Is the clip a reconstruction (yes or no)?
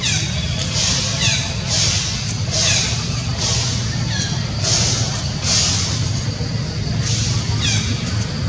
no